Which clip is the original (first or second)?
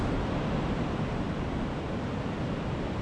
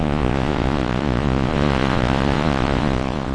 first